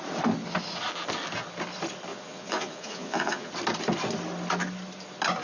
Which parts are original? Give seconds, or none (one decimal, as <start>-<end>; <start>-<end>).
0.0-2.1; 3.5-5.4